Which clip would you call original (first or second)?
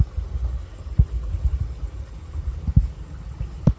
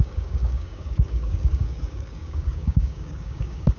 first